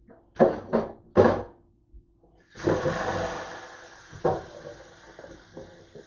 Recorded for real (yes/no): yes